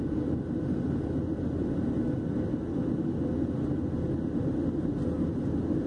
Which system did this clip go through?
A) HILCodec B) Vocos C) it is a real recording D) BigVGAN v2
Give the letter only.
C